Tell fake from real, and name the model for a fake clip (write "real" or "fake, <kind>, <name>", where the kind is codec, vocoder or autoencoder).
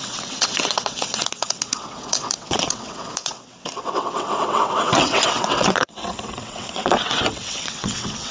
fake, vocoder, WaveNeXt